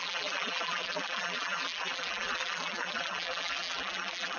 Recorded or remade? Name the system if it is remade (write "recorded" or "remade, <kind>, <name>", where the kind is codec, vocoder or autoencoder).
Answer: remade, vocoder, BigVGAN v2